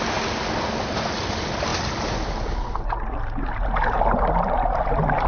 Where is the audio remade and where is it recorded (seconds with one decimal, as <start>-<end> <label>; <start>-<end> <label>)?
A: 0.0-5.3 recorded